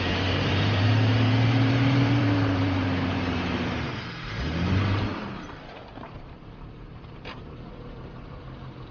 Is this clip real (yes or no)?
no